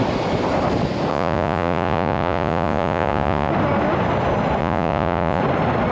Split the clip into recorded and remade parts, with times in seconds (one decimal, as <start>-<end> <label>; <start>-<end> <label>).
0.0-1.1 recorded; 1.1-3.5 remade; 3.5-4.6 recorded; 4.6-5.4 remade; 5.4-5.9 recorded